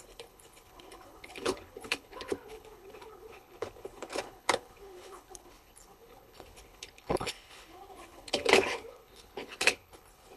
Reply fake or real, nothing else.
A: fake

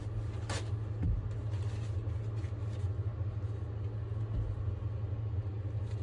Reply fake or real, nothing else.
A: real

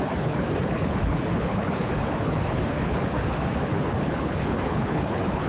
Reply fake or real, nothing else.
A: fake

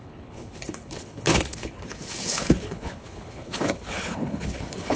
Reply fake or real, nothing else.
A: fake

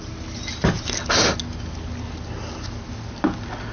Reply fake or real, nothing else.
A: real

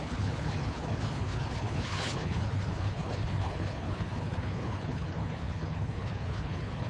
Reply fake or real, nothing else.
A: fake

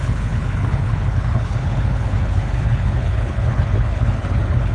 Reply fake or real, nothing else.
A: fake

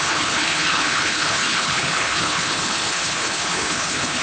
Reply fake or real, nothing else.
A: fake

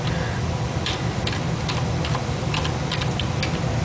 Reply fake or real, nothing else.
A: real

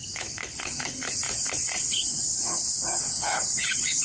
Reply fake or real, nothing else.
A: fake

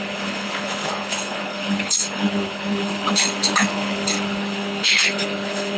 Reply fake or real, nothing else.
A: fake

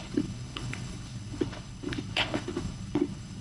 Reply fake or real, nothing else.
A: fake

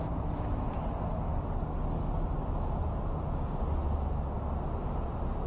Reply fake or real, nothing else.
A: real